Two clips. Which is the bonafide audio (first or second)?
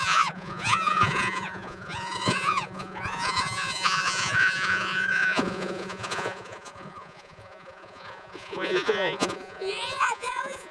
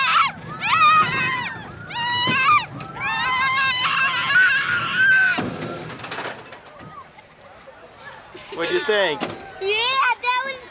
second